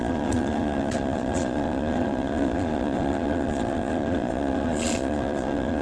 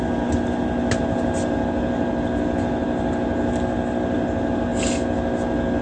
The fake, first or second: first